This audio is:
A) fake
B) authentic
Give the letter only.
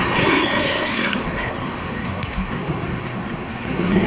A